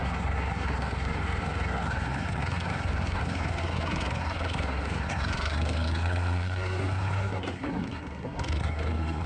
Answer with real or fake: fake